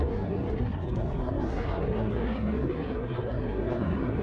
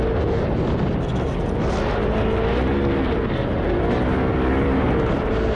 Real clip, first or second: second